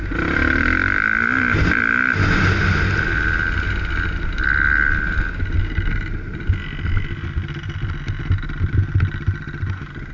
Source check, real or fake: real